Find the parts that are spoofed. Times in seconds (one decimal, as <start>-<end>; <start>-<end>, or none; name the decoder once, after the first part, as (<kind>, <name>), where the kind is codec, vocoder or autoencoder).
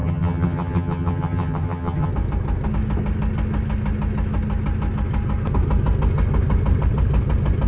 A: 0.0-2.1 (vocoder, HiFi-GAN)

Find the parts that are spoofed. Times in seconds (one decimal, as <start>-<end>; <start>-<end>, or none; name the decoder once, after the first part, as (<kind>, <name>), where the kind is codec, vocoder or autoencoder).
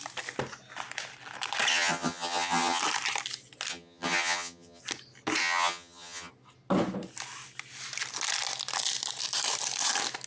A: 1.7-2.8 (vocoder, HiFi-GAN); 3.7-4.8; 5.4-6.3